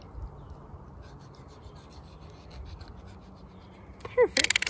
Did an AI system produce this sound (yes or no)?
no